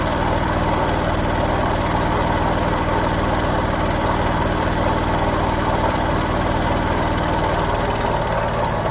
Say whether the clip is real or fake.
fake